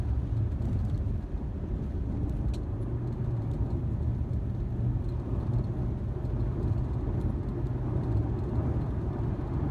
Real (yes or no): yes